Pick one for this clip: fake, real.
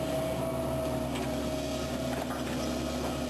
real